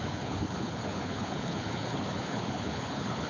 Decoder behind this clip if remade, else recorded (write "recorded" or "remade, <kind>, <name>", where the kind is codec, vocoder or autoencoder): remade, codec, HILCodec